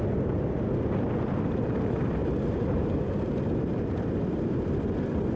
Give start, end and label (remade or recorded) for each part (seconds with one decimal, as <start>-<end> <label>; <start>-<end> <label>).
0.0-2.2 recorded; 2.2-5.4 remade